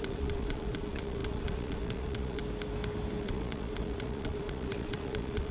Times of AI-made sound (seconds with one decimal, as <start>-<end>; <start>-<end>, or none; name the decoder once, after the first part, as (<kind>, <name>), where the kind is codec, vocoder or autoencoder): 0.0-2.4 (vocoder, Vocos); 3.2-5.5